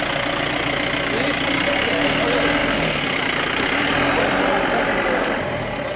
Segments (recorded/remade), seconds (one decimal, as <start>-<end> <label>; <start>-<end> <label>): 0.0-6.0 recorded